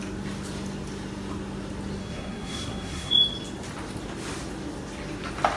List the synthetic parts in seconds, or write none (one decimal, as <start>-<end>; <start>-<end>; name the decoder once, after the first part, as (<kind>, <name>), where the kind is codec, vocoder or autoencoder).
2.0-3.1 (codec, SNAC)